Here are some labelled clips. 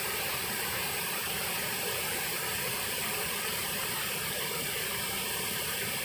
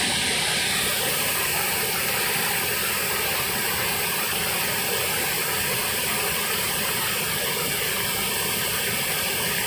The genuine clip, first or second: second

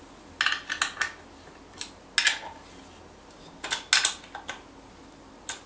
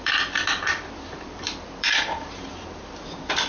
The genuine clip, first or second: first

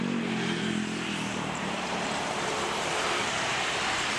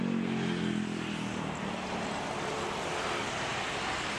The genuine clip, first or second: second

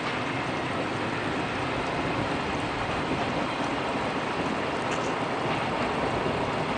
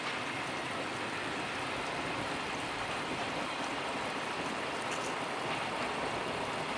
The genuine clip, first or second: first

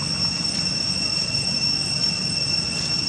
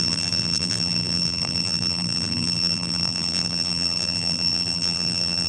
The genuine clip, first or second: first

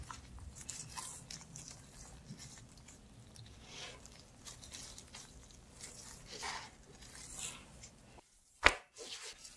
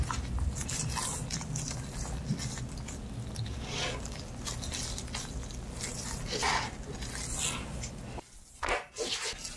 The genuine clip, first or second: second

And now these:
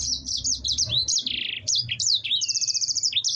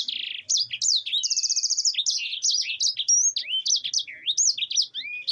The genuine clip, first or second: second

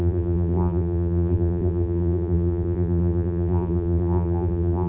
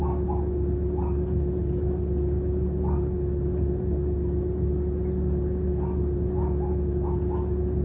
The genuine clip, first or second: second